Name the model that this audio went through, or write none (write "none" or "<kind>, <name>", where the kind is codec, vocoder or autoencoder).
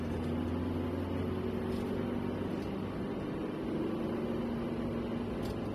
none